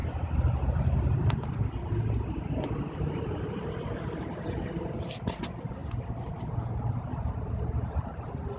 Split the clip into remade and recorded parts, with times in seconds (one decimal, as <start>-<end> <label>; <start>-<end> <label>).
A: 0.0-8.6 recorded